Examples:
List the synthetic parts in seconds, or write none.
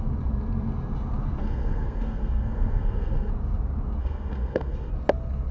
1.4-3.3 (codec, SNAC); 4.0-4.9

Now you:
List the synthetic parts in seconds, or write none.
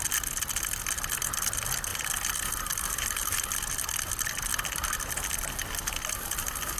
none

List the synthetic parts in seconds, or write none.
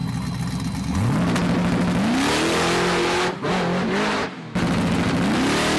none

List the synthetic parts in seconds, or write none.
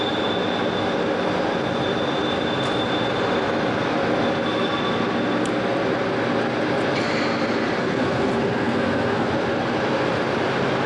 7.8-9.3 (codec, SNAC)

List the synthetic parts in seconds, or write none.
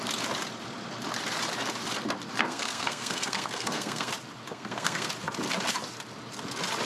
2.4-4.1 (codec, SNAC); 4.5-5.1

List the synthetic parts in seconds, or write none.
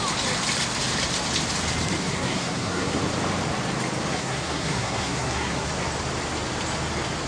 2.0-3.0 (codec, SNAC); 4.1-5.7